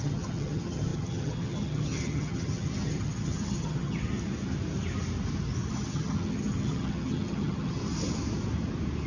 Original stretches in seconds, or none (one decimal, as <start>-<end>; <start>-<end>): 4.1-5.7; 7.8-9.1